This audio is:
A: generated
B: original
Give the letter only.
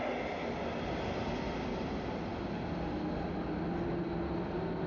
B